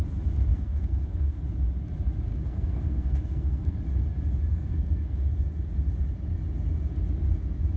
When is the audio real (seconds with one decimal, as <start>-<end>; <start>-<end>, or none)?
0.0-0.5; 1.4-2.3; 3.8-4.5; 5.3-7.8